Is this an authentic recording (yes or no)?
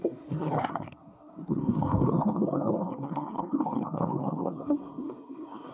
no